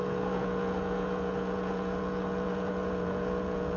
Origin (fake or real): fake